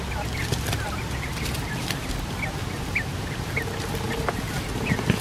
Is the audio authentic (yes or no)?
yes